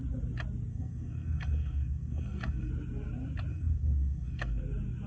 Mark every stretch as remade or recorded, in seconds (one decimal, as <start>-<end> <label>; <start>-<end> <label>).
0.0-0.7 recorded; 0.7-2.7 remade; 2.7-3.5 recorded; 3.5-4.6 remade; 4.6-5.1 recorded